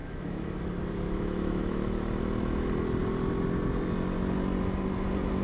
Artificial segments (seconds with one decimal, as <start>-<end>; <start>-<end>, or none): 0.0-2.2